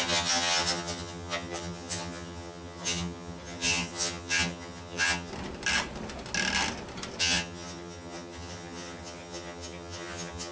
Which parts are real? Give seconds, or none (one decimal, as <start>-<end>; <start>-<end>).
5.3-7.2